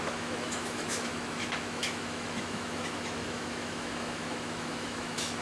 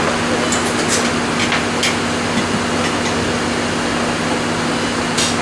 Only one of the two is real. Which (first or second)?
second